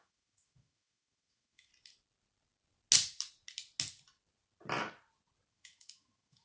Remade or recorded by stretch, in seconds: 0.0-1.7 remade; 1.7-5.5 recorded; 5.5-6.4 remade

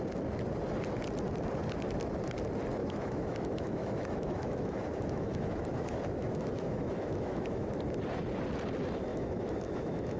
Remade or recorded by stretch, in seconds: 0.0-2.8 recorded; 2.8-7.8 remade; 7.8-9.1 recorded; 9.1-10.2 remade

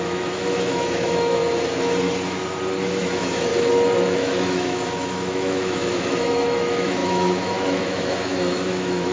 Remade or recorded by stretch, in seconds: 0.0-1.4 remade; 1.4-2.9 recorded; 2.9-3.5 remade; 3.5-4.1 recorded; 4.1-9.1 remade

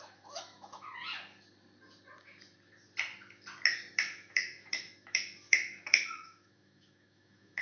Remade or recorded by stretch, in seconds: 0.0-0.9 remade; 0.9-3.9 recorded; 3.9-7.6 remade

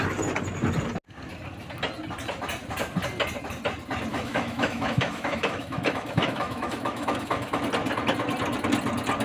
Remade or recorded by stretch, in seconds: 0.0-4.1 recorded; 4.1-7.6 remade; 7.6-9.2 recorded

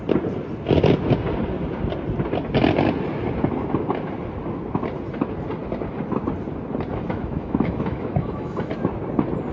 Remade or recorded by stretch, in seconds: 0.0-6.9 recorded; 6.9-8.7 remade; 8.7-9.5 recorded